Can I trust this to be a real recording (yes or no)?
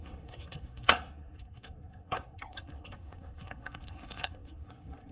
no